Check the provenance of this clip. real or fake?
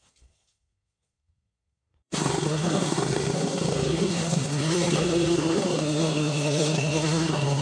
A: fake